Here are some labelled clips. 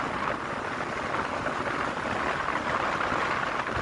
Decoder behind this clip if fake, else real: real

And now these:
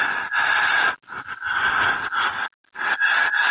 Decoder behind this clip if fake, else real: real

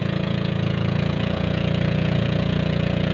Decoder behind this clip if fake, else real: fake, vocoder, Vocos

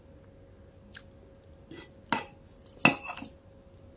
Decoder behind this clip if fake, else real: real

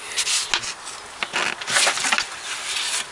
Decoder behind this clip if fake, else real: real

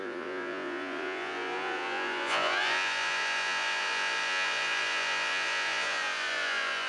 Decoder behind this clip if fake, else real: fake, vocoder, Vocos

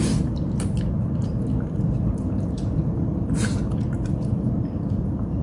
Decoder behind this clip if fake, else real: fake, vocoder, BigVGAN v2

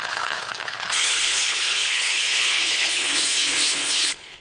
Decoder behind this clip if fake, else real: fake, codec, HILCodec